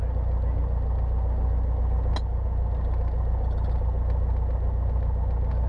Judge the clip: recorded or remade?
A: recorded